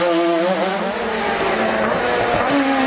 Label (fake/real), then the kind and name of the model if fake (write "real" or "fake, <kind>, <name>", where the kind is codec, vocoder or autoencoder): real